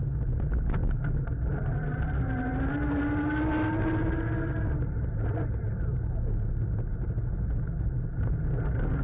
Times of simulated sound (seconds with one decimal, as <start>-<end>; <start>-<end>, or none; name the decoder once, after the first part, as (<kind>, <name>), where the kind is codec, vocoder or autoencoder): none

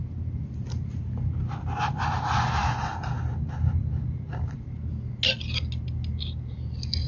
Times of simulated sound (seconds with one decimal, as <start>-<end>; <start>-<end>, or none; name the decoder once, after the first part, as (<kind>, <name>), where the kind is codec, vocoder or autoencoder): none

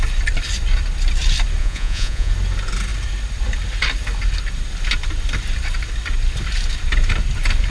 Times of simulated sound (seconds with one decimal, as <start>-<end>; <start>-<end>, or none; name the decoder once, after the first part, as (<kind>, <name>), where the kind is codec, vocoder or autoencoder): 1.6-2.3 (vocoder, Vocos)

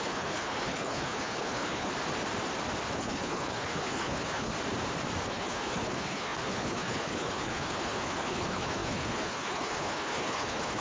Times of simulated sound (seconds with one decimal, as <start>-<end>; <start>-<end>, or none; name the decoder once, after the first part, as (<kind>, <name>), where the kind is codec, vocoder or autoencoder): 0.0-1.9 (codec, HILCodec); 3.0-4.5; 5.3-10.8

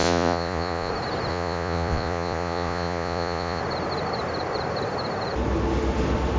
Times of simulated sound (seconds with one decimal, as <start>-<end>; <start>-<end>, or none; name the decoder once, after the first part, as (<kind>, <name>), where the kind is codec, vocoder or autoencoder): 0.0-0.9 (vocoder, Vocos); 1.3-3.6

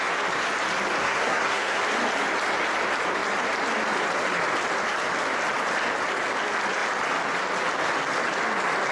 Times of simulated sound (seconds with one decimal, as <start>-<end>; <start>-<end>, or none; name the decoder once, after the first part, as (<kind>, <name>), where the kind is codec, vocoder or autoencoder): 1.0-1.8 (codec, SNAC)

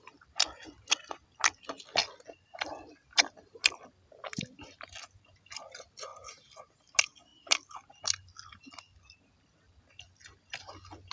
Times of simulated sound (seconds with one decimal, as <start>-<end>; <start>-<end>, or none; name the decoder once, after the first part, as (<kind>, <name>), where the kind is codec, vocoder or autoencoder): none

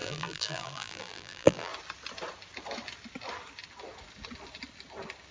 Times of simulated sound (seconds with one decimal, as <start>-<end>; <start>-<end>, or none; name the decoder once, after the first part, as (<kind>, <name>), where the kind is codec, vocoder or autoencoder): 0.0-1.7 (vocoder, BigVGAN v2)